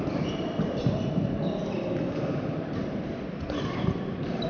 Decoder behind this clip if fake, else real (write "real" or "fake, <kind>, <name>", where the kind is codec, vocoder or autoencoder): real